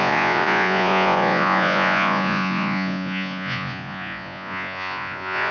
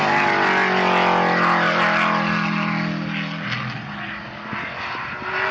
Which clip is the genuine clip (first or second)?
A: second